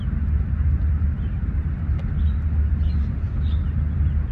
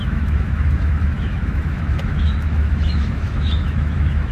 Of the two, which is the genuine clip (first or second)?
first